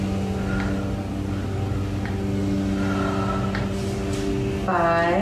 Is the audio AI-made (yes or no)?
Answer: no